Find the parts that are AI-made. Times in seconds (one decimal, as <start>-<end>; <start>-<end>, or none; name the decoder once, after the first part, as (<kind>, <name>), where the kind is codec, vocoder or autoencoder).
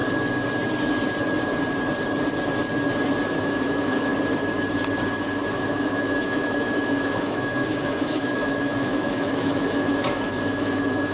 3.4-4.1 (autoencoder, DAC-VAE); 5.5-11.1